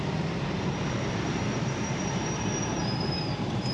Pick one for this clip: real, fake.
fake